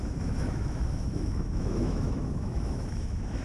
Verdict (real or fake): fake